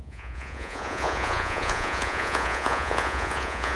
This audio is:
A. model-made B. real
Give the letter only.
A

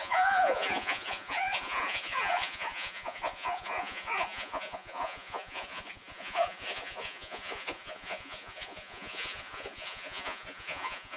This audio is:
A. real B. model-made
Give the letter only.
B